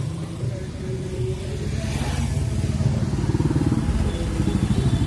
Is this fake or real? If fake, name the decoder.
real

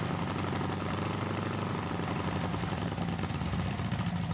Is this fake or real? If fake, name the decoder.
real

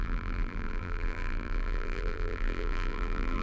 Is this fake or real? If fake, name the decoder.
fake, vocoder, BigVGAN v2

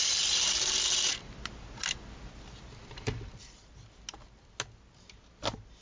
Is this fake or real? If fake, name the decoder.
real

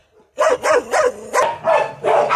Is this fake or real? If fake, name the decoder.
fake, vocoder, BigVGAN v2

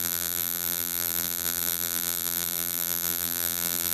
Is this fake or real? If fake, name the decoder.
fake, vocoder, BigVGAN v2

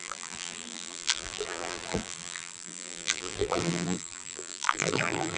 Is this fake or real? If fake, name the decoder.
fake, vocoder, BigVGAN v2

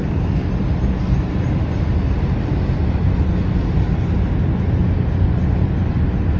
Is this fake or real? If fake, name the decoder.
real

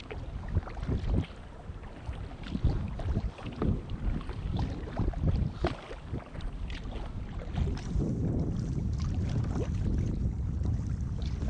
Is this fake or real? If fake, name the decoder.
real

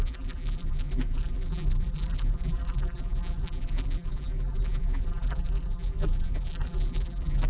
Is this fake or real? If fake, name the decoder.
fake, vocoder, BigVGAN v2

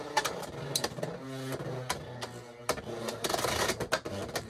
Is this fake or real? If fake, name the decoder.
real